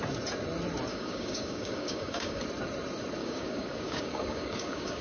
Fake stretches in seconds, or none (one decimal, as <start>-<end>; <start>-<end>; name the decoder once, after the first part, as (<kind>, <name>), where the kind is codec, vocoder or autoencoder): 0.9-2.4 (codec, DAC); 3.2-5.0